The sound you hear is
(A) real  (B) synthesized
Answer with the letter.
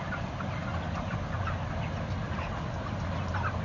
A